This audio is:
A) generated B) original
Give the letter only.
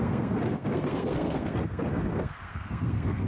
A